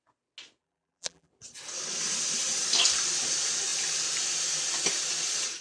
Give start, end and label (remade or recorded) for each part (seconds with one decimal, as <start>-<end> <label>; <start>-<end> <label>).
0.0-0.6 recorded; 0.6-1.3 remade; 1.3-5.6 recorded